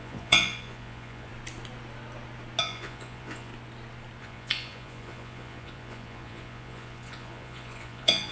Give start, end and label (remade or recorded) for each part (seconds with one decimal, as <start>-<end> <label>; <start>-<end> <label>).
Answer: 0.0-1.3 remade; 1.3-2.6 recorded; 2.6-3.5 remade; 3.5-4.2 recorded; 4.2-8.3 remade